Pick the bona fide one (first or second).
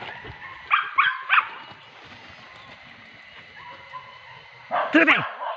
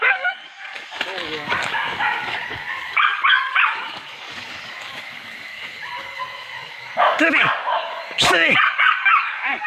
first